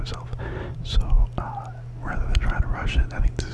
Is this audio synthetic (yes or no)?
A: no